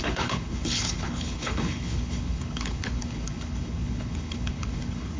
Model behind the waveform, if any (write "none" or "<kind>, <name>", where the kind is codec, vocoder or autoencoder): codec, HILCodec